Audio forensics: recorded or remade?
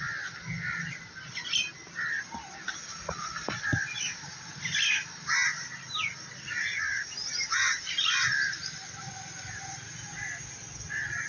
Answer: recorded